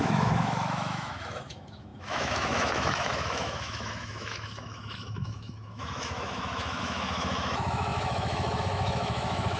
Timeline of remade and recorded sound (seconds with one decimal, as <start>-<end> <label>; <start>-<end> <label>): 0.0-9.6 remade